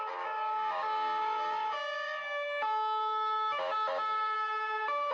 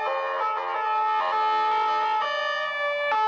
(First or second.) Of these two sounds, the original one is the second